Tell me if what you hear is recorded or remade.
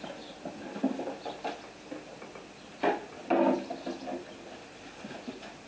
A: recorded